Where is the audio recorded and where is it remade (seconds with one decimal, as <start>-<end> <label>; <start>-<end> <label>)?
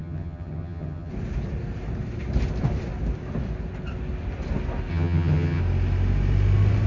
0.0-1.1 remade; 1.1-4.9 recorded; 4.9-5.6 remade; 5.6-6.9 recorded